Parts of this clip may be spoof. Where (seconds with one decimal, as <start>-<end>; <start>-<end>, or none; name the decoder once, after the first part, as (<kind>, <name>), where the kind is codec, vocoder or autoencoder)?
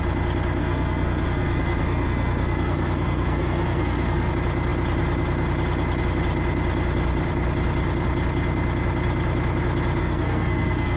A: 0.6-4.3 (codec, SNAC); 10.0-11.0